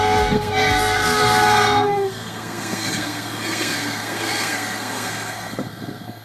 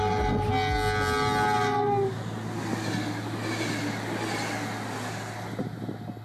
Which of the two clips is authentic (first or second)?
second